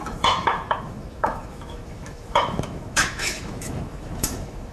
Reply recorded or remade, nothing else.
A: remade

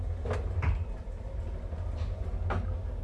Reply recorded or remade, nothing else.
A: recorded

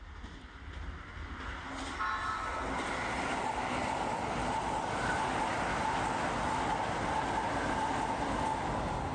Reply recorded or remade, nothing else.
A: recorded